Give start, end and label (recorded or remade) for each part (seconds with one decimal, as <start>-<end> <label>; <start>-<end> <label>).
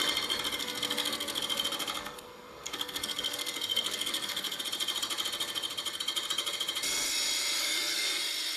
0.0-0.6 recorded; 0.6-1.4 remade; 1.4-2.0 recorded; 2.0-4.6 remade; 4.6-7.6 recorded; 7.6-8.2 remade; 8.2-8.6 recorded